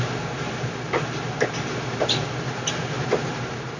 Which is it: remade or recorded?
recorded